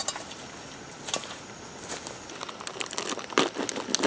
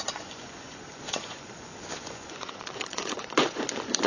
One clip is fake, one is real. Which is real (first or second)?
first